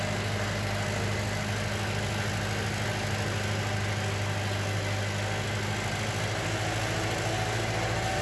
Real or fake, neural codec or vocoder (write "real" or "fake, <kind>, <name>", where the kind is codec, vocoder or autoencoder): real